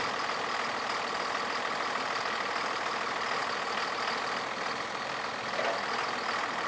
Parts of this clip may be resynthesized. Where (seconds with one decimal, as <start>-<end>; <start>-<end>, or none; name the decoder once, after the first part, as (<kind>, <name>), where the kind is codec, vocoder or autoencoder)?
none